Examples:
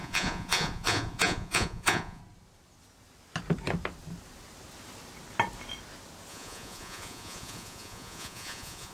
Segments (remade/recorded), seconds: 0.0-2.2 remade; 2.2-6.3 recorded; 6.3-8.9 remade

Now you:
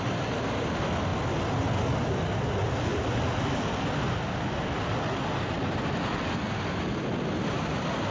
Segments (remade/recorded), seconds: 0.0-8.1 recorded

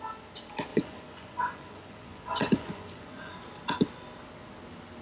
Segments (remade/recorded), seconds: 0.0-0.7 recorded; 0.7-3.3 remade; 3.3-5.0 recorded